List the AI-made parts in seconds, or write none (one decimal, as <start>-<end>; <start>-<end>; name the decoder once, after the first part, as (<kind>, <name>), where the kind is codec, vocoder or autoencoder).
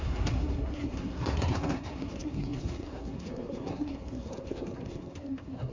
0.0-5.7 (codec, SNAC)